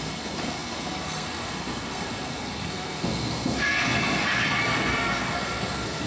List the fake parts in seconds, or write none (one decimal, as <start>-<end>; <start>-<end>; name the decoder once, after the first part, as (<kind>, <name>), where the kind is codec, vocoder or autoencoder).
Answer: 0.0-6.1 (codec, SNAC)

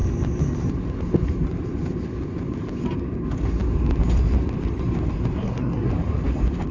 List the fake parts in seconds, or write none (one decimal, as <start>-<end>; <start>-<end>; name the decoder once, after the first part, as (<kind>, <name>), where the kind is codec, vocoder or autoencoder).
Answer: 5.4-5.9 (codec, SNAC)

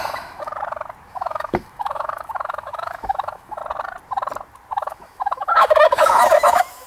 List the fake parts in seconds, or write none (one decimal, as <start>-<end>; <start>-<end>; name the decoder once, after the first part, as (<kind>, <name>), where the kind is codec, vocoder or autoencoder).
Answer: 0.0-0.5 (autoencoder, DAC-VAE); 1.1-3.6; 4.7-6.9